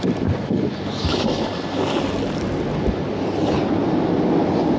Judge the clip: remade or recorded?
recorded